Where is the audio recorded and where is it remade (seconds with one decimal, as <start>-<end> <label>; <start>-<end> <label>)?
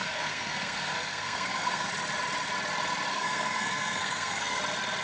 0.0-1.9 remade; 1.9-3.1 recorded; 3.1-4.6 remade; 4.6-5.0 recorded